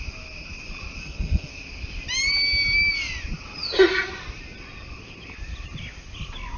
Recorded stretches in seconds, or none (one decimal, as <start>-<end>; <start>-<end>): 0.0-1.0; 1.5-6.6